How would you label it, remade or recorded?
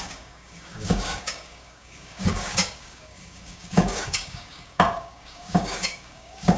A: remade